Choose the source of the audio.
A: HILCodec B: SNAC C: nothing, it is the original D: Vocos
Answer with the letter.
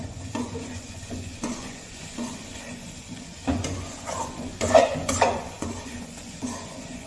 D